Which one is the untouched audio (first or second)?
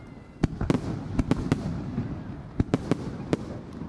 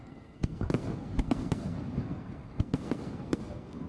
first